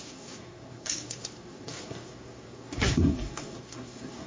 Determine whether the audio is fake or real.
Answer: fake